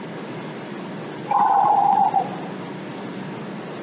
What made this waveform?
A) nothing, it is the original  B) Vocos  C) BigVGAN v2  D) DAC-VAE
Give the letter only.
A